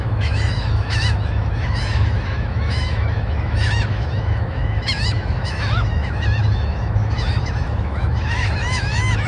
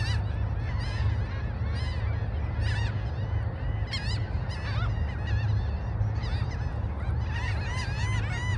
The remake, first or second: first